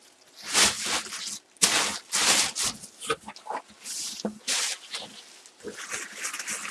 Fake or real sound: real